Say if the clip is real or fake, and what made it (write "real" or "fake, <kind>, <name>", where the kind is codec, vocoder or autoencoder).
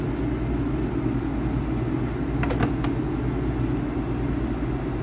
real